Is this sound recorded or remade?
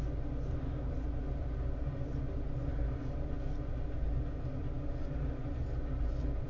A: recorded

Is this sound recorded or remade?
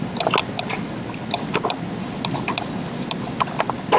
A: recorded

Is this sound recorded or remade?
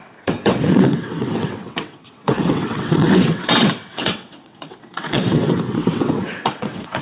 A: remade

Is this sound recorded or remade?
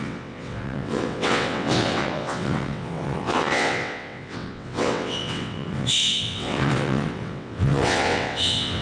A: remade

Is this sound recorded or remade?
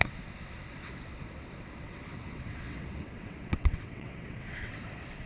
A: remade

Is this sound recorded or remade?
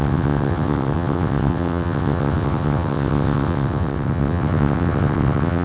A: remade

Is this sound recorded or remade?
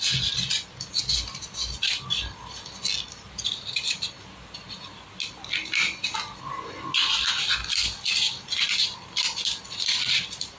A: recorded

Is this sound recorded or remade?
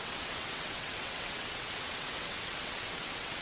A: remade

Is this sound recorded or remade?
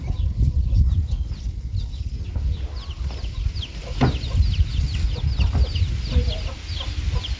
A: recorded